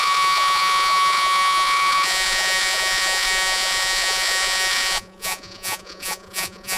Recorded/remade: remade